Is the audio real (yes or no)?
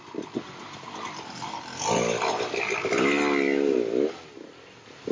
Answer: yes